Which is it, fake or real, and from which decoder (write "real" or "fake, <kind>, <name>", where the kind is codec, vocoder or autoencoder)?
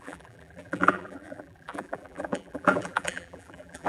fake, vocoder, BigVGAN v2